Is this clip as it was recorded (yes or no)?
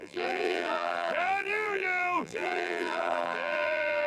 no